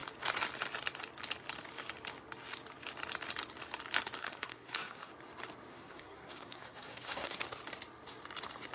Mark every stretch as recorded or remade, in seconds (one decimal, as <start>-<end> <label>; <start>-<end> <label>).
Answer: 0.0-4.2 recorded; 4.2-5.1 remade; 5.1-5.7 recorded; 5.7-7.4 remade; 7.4-8.7 recorded